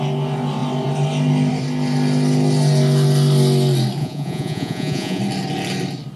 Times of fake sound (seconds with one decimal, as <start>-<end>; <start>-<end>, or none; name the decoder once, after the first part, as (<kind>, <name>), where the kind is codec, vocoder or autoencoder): 4.0-5.2 (vocoder, Vocos)